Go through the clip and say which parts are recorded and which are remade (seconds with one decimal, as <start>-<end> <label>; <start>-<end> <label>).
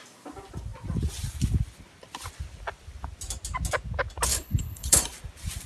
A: 0.0-4.3 recorded; 4.3-5.0 remade; 5.0-5.7 recorded